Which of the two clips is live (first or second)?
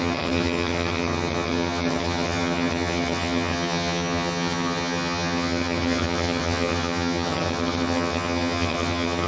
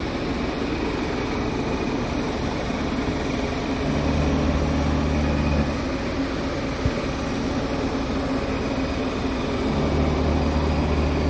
second